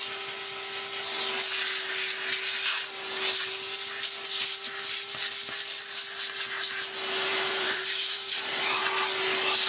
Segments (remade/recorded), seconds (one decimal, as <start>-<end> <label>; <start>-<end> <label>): 0.0-7.3 recorded; 7.3-8.8 remade; 8.8-9.7 recorded